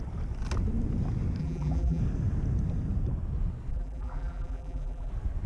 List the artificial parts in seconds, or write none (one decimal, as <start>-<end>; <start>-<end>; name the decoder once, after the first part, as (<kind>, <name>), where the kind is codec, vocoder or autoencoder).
1.4-2.0 (vocoder, BigVGAN v2); 3.7-5.1